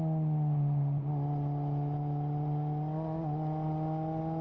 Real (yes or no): yes